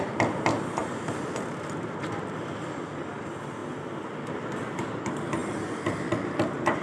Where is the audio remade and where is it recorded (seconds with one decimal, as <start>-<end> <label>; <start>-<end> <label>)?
0.0-6.8 recorded